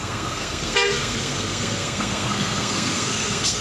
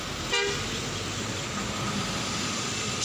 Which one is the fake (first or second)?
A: first